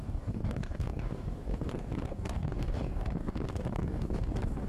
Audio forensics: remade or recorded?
remade